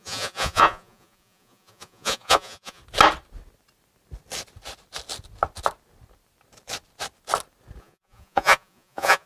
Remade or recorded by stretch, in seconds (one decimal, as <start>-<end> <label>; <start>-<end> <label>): 0.0-2.8 remade; 2.8-7.8 recorded; 7.8-9.3 remade